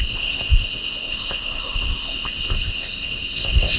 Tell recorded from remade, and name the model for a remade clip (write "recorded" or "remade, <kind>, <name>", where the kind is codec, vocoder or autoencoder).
remade, codec, ZipCodec